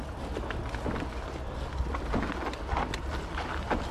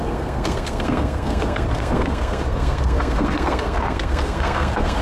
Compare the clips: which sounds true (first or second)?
first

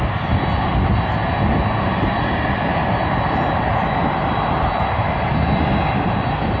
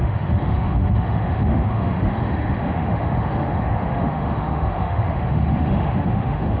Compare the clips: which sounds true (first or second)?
first